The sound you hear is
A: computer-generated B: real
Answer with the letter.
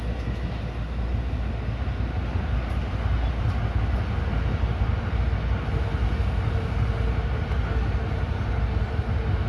B